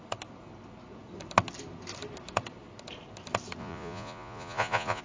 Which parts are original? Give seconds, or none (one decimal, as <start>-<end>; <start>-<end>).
0.0-3.6

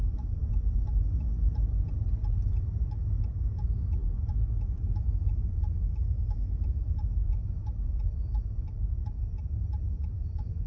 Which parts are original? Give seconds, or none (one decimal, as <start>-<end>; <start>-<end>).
0.4-3.1; 9.0-9.9

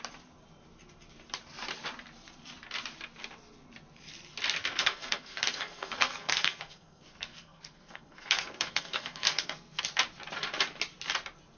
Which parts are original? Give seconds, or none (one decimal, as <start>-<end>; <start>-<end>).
0.0-4.6; 9.8-11.6

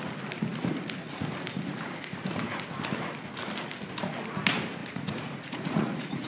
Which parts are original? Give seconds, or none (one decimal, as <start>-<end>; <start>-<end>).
0.0-4.8